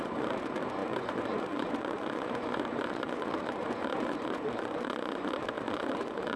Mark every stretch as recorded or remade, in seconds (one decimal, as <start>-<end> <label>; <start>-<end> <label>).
0.0-6.4 remade